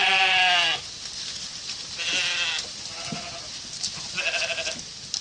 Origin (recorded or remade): recorded